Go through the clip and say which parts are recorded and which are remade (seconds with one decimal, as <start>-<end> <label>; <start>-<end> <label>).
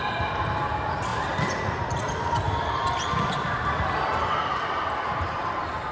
0.0-5.9 recorded